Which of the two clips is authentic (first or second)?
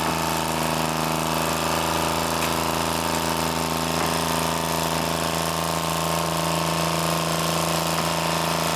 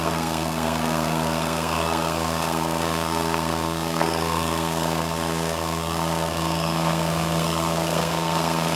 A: first